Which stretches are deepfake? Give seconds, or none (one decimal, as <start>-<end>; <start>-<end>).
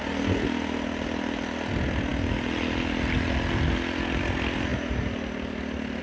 none